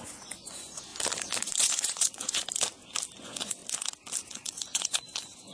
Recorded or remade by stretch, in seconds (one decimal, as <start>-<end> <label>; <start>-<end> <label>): 0.0-0.9 remade; 0.9-1.6 recorded; 1.6-2.4 remade; 2.4-3.2 recorded; 3.2-3.6 remade; 3.6-4.2 recorded; 4.2-5.5 remade